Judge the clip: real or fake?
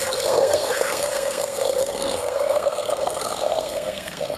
fake